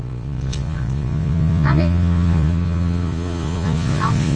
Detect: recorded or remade remade